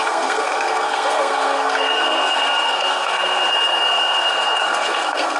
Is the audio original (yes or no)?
no